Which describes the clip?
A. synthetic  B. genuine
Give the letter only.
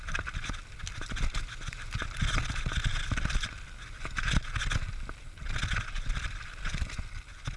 B